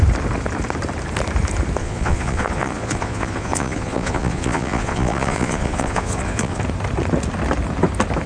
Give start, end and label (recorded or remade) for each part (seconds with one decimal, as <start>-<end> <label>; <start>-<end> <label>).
0.0-1.8 recorded; 1.8-6.6 remade; 6.6-8.3 recorded